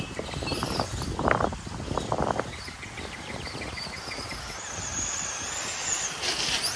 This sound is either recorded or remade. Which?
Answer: recorded